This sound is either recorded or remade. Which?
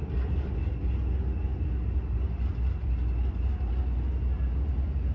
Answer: recorded